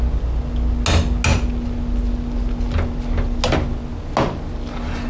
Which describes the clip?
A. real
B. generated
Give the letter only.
A